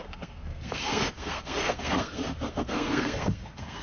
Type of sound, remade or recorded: remade